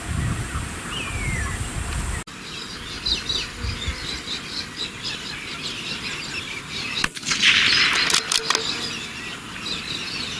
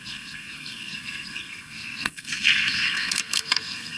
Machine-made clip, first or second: second